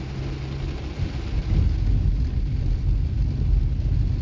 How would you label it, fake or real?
real